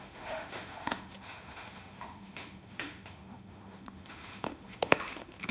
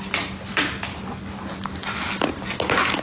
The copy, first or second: first